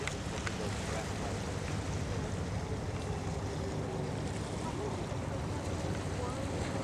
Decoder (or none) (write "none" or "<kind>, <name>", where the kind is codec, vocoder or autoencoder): none